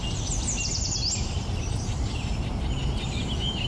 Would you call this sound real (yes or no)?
yes